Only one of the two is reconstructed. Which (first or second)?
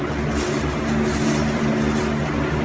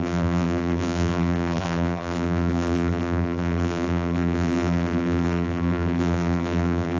second